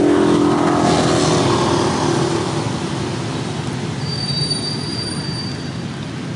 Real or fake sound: real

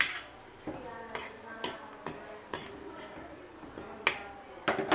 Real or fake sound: real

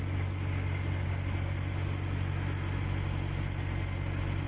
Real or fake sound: real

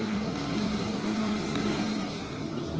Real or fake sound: fake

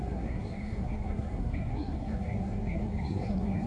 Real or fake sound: fake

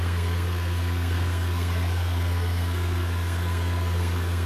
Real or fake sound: fake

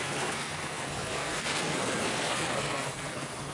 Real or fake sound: fake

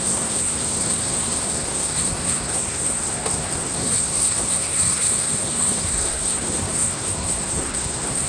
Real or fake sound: fake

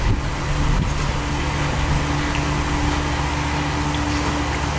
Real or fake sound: real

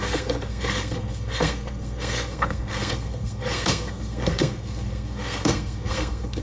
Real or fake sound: fake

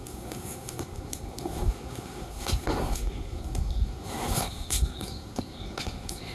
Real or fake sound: fake